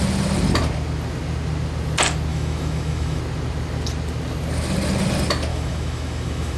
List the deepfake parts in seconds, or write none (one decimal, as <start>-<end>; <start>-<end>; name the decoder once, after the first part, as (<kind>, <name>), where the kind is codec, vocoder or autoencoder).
2.3-3.2 (autoencoder, DAC-VAE); 5.5-6.6